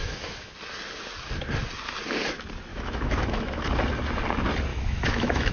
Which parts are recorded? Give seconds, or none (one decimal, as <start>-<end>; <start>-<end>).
0.5-2.7; 3.6-4.7